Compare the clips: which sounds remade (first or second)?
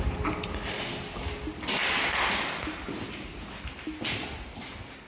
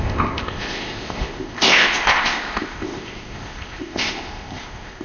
second